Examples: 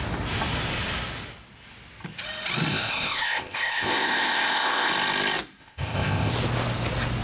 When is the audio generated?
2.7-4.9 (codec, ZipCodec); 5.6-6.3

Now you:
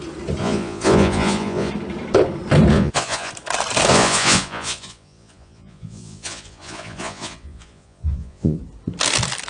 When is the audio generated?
0.4-1.7 (vocoder, Vocos); 2.7-3.3; 3.9-8.6

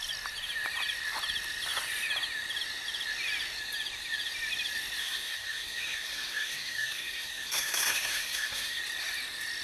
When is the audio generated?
5.0-8.8 (codec, SNAC)